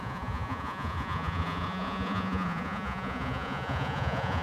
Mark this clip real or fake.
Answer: fake